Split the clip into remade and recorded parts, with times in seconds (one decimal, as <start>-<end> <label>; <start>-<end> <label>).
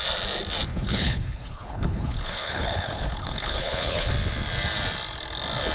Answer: 0.0-0.7 recorded; 0.7-4.1 remade; 4.1-5.7 recorded